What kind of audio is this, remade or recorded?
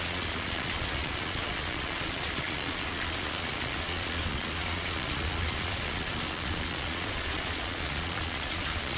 remade